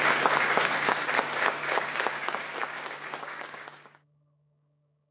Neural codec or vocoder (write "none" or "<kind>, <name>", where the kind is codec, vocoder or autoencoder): codec, DAC